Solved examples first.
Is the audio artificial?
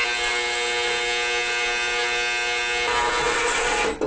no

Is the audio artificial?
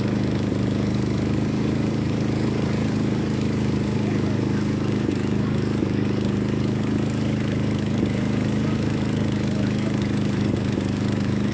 yes